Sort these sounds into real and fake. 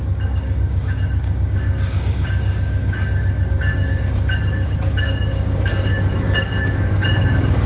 fake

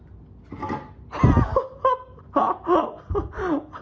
real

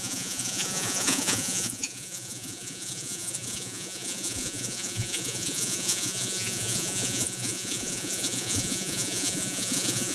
fake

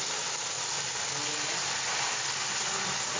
real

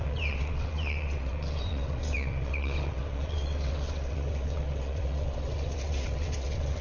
fake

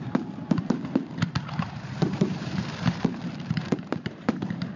fake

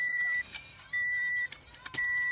fake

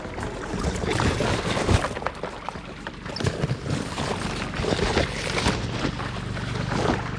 real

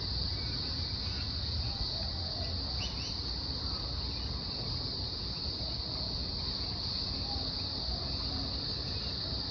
real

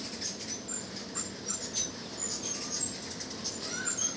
real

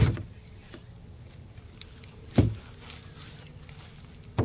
real